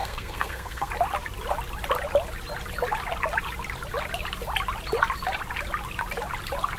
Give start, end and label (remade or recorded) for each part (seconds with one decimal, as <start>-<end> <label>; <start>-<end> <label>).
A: 0.0-0.9 remade; 0.9-6.8 recorded